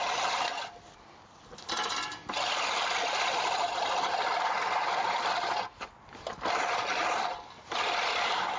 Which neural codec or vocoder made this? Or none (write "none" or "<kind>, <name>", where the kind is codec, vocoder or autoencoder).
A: none